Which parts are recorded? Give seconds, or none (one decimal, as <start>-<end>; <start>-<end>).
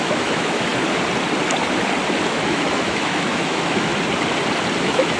0.7-2.3; 3.9-4.8